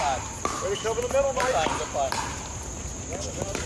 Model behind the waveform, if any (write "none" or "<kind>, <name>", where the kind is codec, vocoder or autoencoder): none